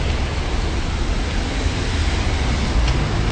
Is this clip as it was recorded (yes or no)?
yes